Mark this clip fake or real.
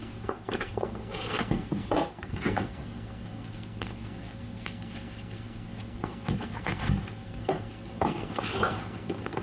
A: fake